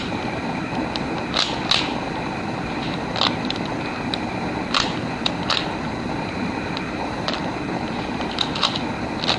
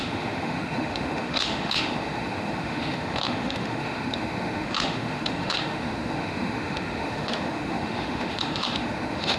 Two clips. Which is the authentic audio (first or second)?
first